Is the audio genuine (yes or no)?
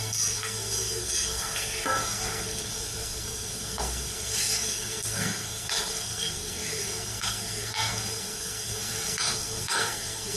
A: no